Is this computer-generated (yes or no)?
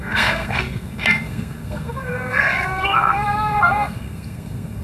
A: yes